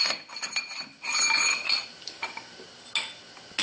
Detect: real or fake real